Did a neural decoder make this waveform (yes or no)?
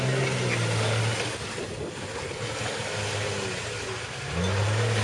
no